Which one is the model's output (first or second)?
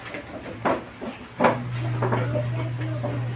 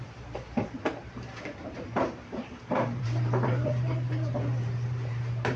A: second